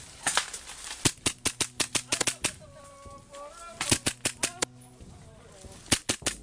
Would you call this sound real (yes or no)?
yes